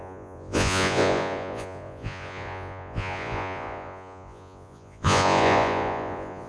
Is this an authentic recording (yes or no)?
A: no